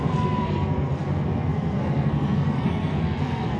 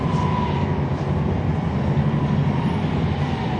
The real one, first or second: second